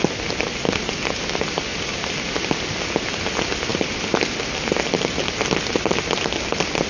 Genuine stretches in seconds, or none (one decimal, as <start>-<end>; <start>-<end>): 0.0-6.9